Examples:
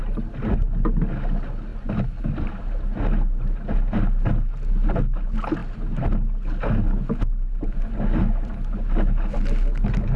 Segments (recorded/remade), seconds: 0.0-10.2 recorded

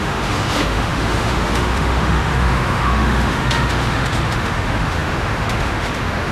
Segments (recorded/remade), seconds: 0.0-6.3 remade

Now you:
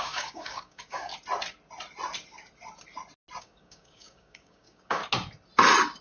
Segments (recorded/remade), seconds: 0.0-1.1 remade; 1.1-3.4 recorded; 3.4-5.0 remade; 5.0-6.0 recorded

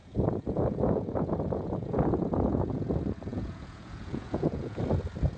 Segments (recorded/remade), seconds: 0.0-2.9 remade; 2.9-3.3 recorded; 3.3-4.8 remade; 4.8-5.4 recorded

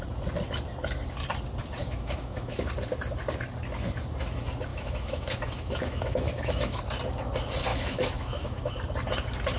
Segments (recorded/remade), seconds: 0.0-1.8 recorded; 1.8-2.7 remade; 2.7-4.7 recorded; 4.7-6.8 remade; 6.8-7.7 recorded; 7.7-8.7 remade; 8.7-9.6 recorded

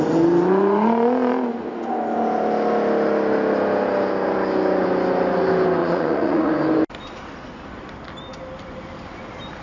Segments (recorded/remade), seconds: 0.0-5.8 recorded; 5.8-6.5 remade; 6.5-9.6 recorded

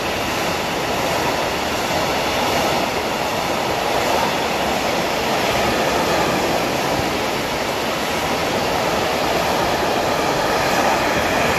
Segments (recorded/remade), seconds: 0.0-11.6 recorded

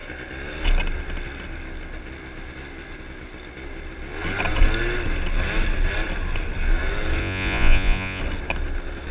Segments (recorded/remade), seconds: 0.0-7.2 recorded; 7.2-8.2 remade; 8.2-9.1 recorded